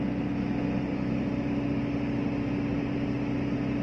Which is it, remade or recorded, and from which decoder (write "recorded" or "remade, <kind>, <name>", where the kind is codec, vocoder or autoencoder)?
recorded